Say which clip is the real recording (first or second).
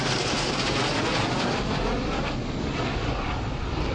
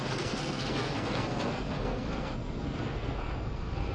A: first